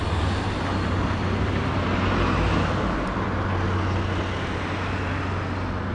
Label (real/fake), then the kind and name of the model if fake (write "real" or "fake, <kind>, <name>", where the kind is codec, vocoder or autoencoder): real